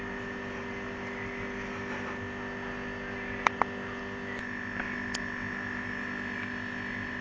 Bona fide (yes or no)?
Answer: yes